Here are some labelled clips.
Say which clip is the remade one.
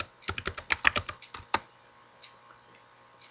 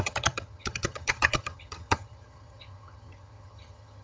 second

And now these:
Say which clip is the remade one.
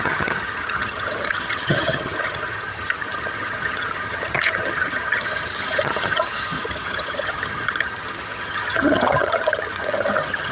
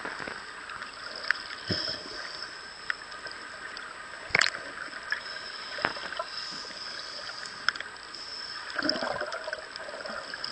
first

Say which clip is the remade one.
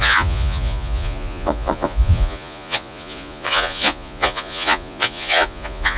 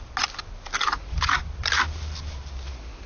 first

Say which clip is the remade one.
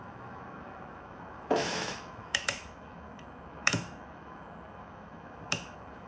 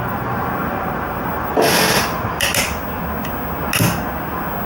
first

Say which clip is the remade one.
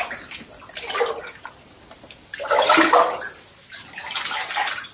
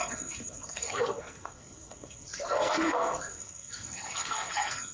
second